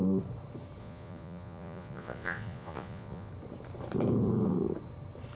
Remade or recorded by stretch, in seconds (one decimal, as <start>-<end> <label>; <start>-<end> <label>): 0.0-0.8 recorded; 0.8-3.3 remade; 3.3-5.4 recorded